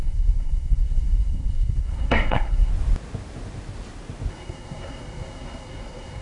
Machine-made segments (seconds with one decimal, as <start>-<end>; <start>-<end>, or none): 0.0-2.7; 4.3-6.2